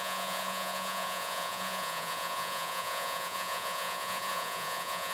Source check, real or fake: fake